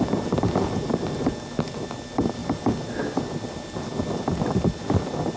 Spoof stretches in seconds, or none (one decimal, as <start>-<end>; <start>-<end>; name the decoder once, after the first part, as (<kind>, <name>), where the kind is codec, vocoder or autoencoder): none